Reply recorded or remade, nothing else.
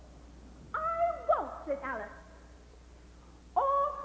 recorded